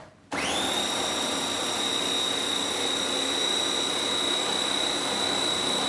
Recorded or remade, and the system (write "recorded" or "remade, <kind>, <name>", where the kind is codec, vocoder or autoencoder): recorded